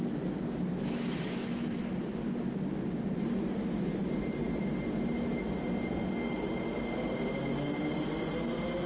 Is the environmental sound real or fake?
real